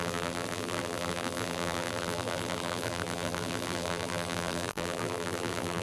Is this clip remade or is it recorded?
remade